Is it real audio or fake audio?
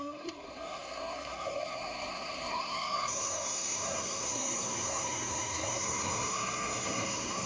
fake